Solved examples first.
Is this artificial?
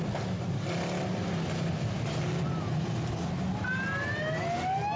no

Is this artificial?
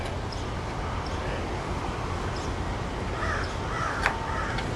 no